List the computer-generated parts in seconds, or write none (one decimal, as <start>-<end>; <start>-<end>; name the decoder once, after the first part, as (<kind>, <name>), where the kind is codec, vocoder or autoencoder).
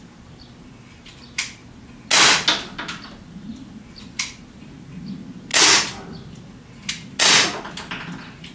none